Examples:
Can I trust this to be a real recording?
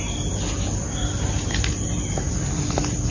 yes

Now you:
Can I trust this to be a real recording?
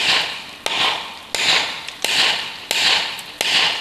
yes